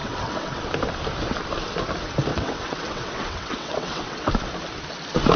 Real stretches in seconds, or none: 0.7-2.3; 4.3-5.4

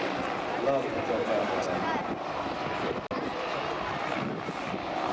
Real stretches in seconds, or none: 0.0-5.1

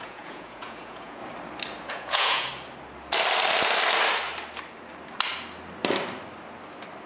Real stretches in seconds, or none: 1.2-1.9; 2.5-7.1